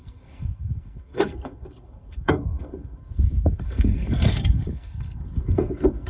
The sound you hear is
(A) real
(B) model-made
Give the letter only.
B